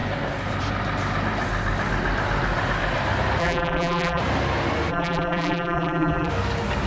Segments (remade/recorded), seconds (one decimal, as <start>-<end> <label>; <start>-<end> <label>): 0.0-3.4 recorded; 3.4-4.2 remade; 4.2-4.9 recorded; 4.9-6.3 remade; 6.3-6.9 recorded